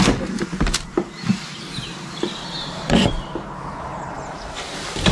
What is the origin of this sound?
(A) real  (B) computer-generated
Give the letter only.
B